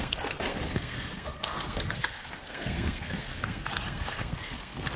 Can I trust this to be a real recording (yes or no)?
no